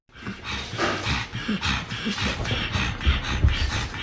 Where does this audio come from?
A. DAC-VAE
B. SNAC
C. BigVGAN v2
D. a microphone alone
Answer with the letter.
D